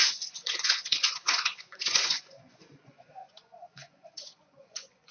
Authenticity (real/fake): fake